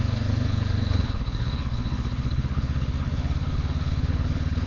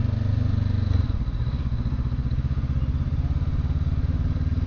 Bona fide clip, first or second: second